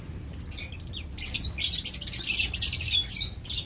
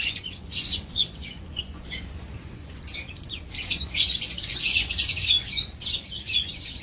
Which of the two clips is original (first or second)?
first